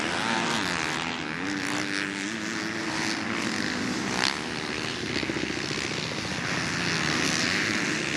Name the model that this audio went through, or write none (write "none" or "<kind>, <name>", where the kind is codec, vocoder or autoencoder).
none